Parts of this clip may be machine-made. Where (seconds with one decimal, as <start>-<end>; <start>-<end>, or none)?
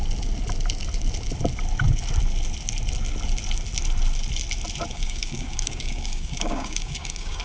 4.9-7.4